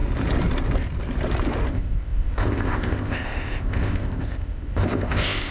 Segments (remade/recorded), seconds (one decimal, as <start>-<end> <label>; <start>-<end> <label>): 0.0-1.7 recorded; 1.7-5.5 remade